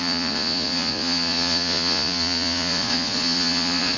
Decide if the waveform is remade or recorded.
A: remade